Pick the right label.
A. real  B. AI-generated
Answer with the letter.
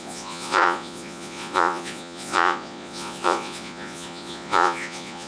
B